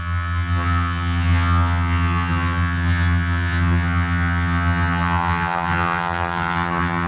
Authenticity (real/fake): fake